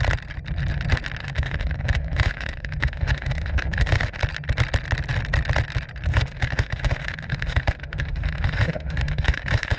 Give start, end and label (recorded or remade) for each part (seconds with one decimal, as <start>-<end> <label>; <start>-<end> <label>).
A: 0.0-1.2 recorded; 1.2-4.2 remade; 4.2-6.1 recorded; 6.1-9.8 remade